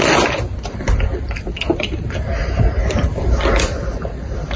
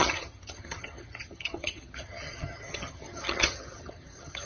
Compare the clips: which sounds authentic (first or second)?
first